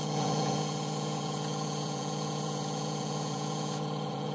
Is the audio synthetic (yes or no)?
yes